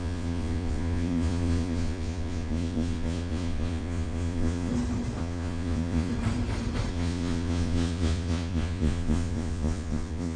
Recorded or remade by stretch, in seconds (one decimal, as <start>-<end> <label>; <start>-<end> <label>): 0.0-4.7 remade; 4.7-5.2 recorded; 5.2-6.1 remade; 6.1-6.9 recorded; 6.9-10.4 remade